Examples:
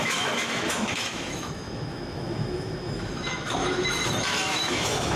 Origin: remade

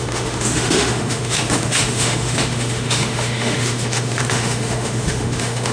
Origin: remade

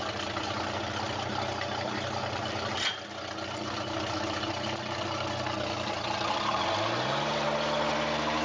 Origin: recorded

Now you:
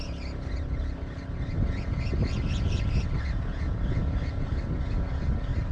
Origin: recorded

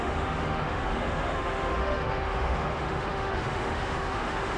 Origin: remade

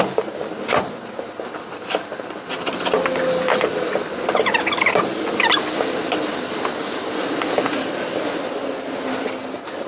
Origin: recorded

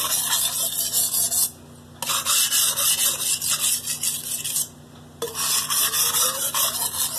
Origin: recorded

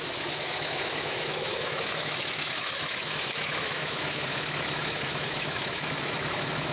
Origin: remade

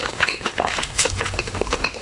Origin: remade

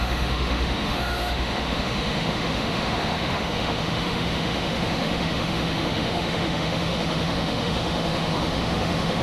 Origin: remade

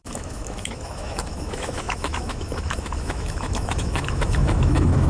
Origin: remade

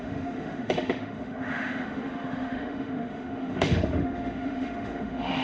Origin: remade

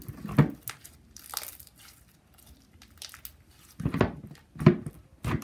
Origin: recorded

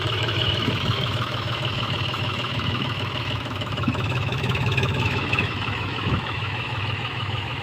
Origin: remade